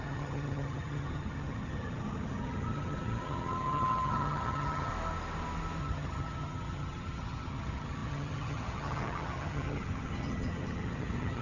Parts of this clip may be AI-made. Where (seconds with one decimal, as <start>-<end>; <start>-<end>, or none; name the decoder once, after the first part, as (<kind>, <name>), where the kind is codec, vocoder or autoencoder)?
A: 0.0-4.9 (vocoder, HiFi-GAN); 5.8-11.4